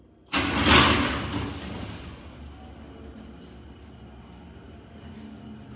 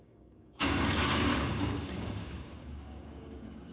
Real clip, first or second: first